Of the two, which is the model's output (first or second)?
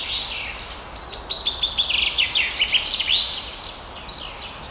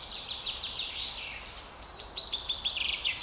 second